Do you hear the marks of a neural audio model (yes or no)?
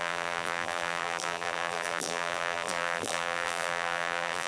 yes